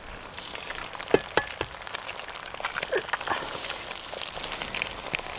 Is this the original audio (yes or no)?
yes